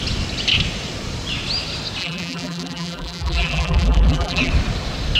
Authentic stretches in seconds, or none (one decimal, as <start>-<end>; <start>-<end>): 0.0-2.0; 4.5-5.2